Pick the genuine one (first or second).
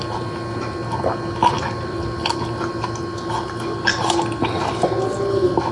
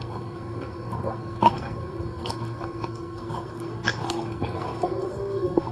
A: first